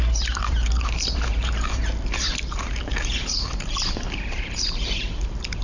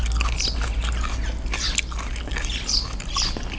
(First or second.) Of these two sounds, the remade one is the first